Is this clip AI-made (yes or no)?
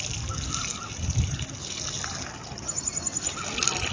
no